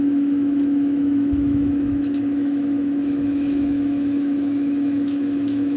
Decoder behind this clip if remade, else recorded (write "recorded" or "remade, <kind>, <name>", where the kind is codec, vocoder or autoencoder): remade, autoencoder, DAC-VAE